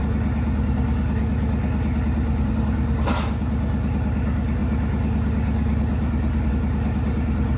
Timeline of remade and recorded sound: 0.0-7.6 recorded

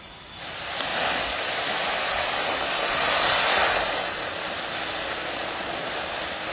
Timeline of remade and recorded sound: 0.0-5.2 recorded; 5.2-5.9 remade; 5.9-6.5 recorded

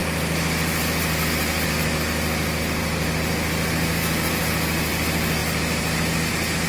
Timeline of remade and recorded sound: 0.0-6.7 recorded

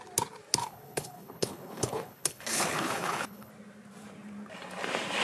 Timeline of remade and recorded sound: 0.0-0.6 recorded; 0.6-3.5 remade; 3.5-5.2 recorded

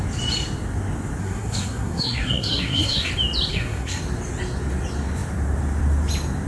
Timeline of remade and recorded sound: 0.0-1.2 recorded; 1.2-3.1 remade; 3.1-3.5 recorded; 3.5-4.0 remade; 4.0-6.5 recorded